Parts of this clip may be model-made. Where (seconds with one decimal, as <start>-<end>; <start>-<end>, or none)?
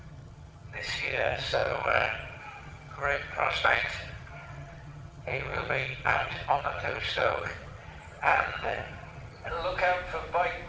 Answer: 0.0-9.5